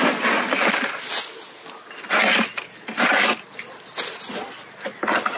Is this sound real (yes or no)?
yes